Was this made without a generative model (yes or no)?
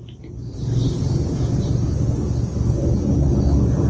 yes